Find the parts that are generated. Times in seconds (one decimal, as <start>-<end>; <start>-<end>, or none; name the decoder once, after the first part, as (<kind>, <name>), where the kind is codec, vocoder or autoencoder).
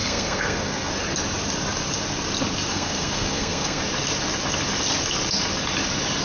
0.0-0.9 (codec, SNAC); 2.7-3.8